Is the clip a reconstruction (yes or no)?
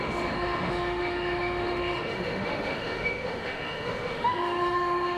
yes